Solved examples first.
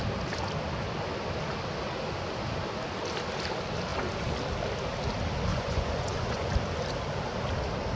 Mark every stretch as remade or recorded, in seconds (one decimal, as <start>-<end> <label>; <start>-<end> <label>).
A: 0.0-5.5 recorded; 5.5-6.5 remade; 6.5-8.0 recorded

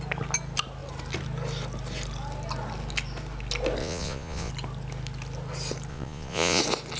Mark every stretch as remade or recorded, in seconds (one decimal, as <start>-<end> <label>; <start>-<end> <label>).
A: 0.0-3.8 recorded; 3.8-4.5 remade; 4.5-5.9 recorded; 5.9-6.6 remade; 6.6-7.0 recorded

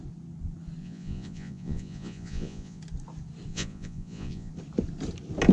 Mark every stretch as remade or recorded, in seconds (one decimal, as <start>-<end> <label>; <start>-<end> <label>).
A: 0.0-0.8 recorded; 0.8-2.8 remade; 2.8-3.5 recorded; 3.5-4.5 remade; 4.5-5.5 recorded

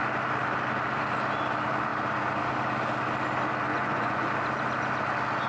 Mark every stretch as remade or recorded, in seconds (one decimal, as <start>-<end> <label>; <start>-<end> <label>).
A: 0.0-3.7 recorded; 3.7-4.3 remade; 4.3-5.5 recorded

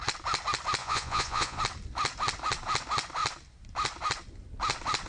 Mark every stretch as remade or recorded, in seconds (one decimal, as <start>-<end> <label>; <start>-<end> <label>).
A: 0.0-0.8 recorded; 0.8-1.6 remade; 1.6-5.1 recorded

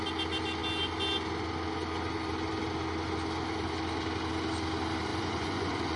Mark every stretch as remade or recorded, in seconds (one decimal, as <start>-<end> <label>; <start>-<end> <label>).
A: 0.0-5.1 recorded; 5.1-6.0 remade

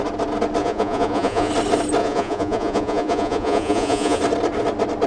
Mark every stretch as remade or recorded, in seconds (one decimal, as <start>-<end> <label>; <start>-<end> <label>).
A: 0.0-0.6 recorded; 0.6-1.5 remade; 1.5-2.0 recorded; 2.0-4.2 remade; 4.2-5.1 recorded